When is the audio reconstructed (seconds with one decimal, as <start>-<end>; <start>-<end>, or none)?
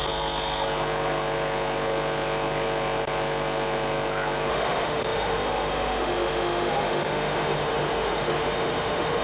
4.5-9.2